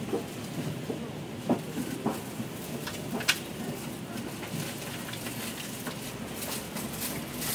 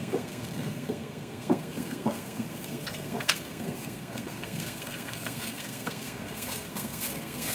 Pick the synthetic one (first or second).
second